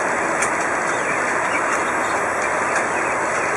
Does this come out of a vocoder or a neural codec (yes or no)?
no